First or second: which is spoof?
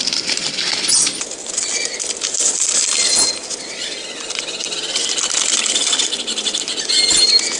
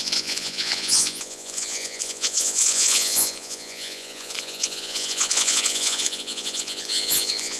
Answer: second